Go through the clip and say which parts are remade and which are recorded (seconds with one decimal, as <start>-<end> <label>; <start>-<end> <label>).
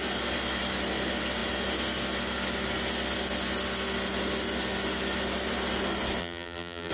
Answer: 0.0-6.2 recorded; 6.2-6.9 remade